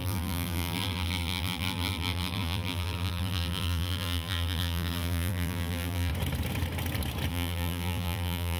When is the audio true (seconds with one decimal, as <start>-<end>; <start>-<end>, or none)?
6.1-7.3